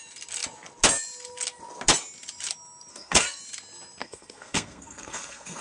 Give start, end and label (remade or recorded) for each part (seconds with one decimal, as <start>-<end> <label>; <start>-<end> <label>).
0.0-2.9 recorded; 2.9-3.4 remade; 3.4-4.0 recorded; 4.0-5.6 remade